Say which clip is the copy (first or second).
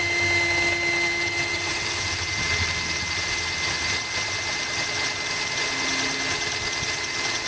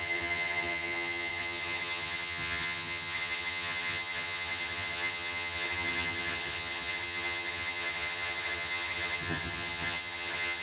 second